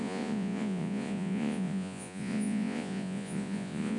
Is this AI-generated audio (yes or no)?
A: yes